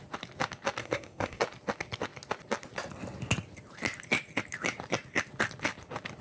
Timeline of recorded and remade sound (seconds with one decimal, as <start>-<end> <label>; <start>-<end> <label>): 0.0-0.8 recorded; 0.8-1.4 remade; 1.4-6.2 recorded